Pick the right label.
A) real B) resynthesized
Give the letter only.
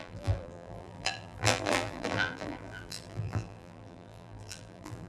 B